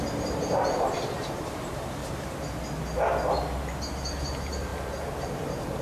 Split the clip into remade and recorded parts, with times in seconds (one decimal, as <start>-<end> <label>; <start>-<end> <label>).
0.0-2.0 remade; 2.0-4.2 recorded; 4.2-5.8 remade